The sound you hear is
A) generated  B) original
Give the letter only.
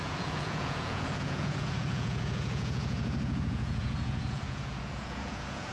A